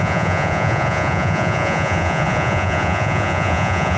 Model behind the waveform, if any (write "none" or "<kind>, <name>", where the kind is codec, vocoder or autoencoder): vocoder, Vocos